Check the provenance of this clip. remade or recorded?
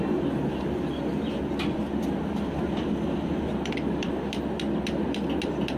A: recorded